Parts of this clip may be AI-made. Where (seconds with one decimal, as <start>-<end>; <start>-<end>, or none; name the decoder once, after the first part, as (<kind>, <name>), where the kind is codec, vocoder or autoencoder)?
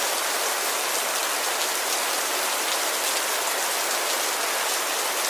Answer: none